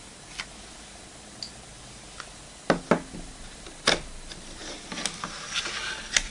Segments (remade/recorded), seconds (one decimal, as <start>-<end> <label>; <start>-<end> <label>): 0.0-6.3 recorded